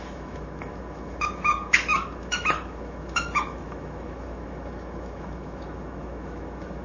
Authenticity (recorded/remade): remade